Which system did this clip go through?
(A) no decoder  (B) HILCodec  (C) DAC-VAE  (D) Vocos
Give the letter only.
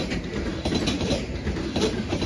A